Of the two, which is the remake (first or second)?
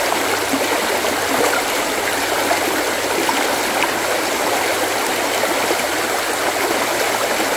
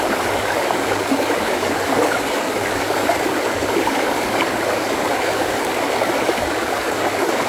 second